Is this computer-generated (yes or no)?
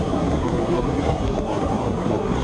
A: yes